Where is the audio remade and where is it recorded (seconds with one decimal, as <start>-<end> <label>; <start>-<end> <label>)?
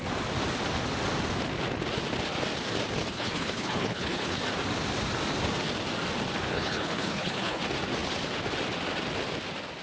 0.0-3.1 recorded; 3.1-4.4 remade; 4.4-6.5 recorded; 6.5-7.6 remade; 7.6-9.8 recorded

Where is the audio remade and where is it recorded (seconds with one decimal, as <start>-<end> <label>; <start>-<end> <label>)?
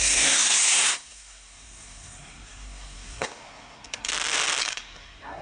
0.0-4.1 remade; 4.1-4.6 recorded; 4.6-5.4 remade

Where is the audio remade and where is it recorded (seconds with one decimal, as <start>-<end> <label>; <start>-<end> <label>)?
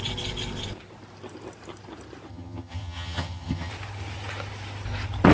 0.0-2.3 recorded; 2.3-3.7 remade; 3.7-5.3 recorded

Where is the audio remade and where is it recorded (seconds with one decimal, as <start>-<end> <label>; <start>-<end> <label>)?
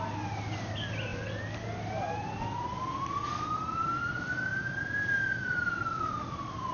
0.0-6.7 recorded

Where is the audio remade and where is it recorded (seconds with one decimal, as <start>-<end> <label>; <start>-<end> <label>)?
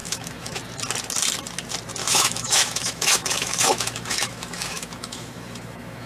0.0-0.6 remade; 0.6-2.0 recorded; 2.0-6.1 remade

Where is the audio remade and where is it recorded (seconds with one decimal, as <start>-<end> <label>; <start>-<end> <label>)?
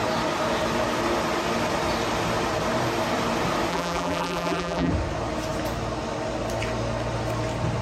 0.0-3.7 recorded; 3.7-4.9 remade; 4.9-7.8 recorded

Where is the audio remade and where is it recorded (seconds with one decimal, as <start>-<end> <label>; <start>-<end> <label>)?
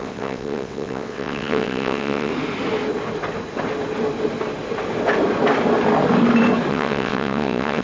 0.0-2.3 remade; 2.3-6.7 recorded; 6.7-7.8 remade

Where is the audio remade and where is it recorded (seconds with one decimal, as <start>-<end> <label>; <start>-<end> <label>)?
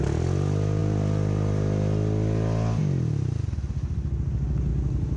0.0-5.2 recorded